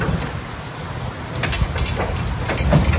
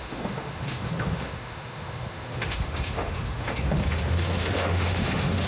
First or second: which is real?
first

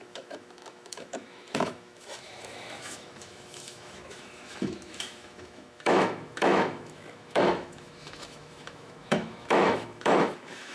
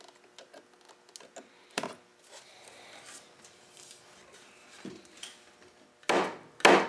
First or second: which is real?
second